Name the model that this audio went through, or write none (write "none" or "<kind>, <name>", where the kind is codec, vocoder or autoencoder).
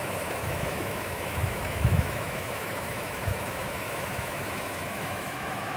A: autoencoder, DAC-VAE